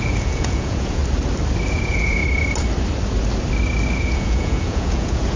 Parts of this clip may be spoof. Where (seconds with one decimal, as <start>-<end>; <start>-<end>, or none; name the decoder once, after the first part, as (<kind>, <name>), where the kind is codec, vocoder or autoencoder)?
0.0-1.0 (vocoder, Vocos); 1.7-2.2; 4.0-5.4